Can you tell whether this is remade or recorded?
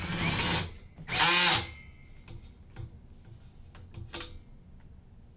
recorded